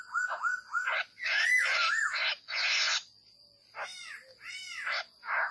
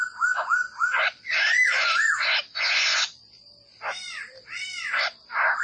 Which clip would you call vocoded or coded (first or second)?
second